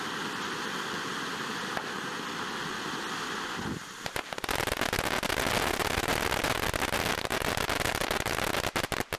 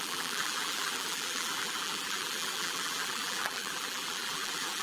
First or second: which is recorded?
first